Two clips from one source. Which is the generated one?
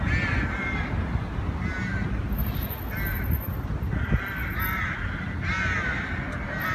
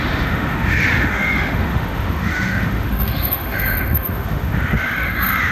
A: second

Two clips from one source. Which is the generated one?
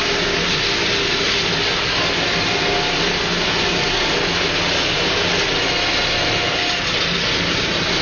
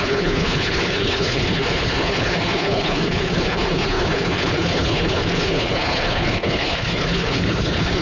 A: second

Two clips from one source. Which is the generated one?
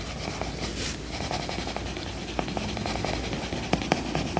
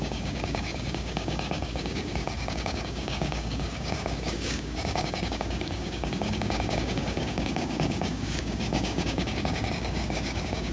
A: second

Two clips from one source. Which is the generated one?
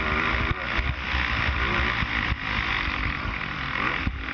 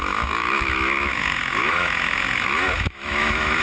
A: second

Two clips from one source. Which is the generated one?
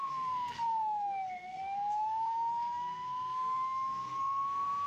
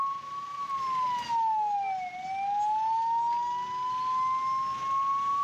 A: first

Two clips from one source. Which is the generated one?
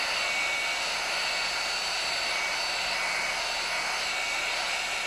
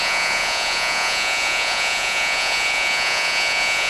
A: second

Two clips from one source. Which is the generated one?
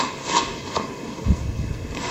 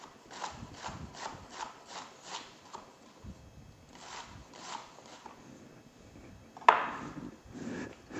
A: first